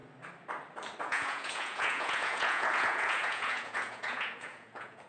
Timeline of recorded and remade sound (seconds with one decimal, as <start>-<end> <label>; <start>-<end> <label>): 0.0-1.0 recorded; 1.0-5.1 remade